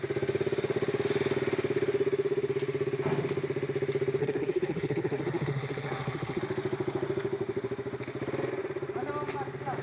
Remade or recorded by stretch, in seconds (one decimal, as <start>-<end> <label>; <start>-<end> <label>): 0.0-4.2 recorded; 4.2-6.4 remade; 6.4-9.8 recorded